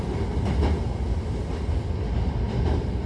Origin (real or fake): real